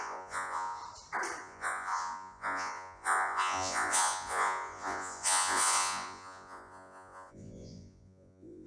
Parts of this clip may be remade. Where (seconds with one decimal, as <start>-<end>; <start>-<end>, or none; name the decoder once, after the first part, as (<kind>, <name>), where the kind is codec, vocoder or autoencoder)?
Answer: 0.0-0.8 (vocoder, Vocos); 1.4-8.7

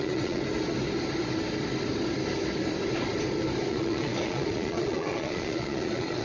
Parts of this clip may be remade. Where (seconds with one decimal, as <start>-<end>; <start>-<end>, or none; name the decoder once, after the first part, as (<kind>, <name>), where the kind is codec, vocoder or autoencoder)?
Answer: 0.0-0.4 (vocoder, Vocos); 3.7-6.2